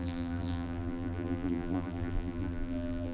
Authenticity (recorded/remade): remade